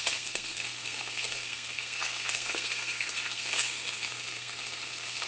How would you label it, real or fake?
fake